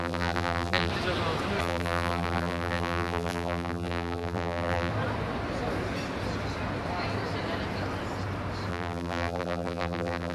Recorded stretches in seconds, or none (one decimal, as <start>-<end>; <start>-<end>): 0.9-1.6; 4.9-8.7

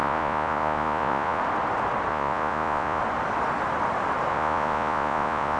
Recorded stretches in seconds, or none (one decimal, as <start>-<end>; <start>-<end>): 1.4-2.1; 3.0-4.3

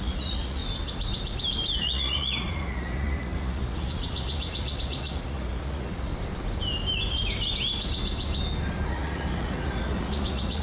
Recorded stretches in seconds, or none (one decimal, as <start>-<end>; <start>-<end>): 0.6-1.8; 6.1-8.9

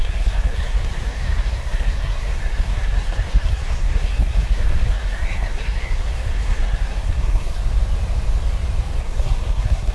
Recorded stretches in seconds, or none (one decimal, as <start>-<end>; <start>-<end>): 7.6-9.0

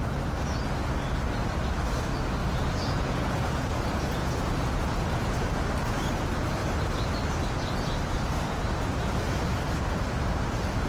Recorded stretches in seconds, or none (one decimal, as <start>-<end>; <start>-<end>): 0.0-2.4; 5.4-10.9

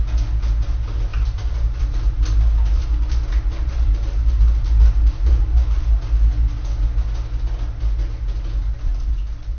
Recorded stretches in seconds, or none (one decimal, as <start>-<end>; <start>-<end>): 0.0-1.1; 6.0-8.6

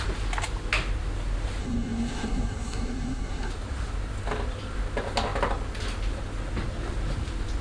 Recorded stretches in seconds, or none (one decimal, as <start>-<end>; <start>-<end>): 0.0-1.6; 3.5-7.6